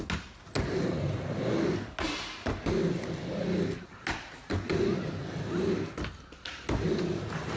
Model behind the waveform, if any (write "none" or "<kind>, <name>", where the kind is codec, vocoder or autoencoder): none